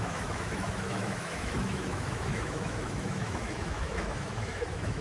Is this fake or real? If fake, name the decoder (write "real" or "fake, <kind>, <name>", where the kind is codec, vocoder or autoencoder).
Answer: fake, autoencoder, DAC-VAE